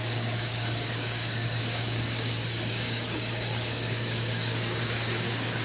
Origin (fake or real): fake